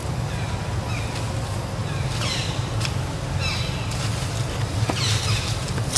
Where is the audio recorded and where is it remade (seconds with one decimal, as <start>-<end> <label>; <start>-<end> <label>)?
0.0-6.0 recorded